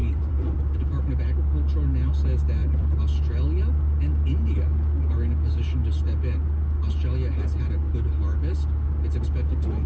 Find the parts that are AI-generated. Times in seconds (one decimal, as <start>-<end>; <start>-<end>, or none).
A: 0.0-1.1; 2.6-3.6